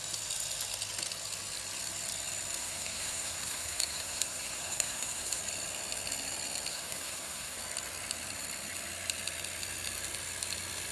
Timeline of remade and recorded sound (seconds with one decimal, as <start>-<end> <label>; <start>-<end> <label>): 0.0-2.6 recorded; 2.6-5.4 remade; 5.4-6.7 recorded; 6.7-7.6 remade; 7.6-10.9 recorded